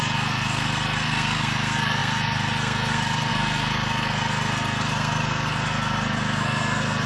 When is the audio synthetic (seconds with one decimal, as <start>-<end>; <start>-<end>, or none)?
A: 0.0-7.1